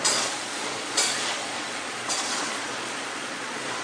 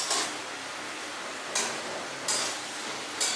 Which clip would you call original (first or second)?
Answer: second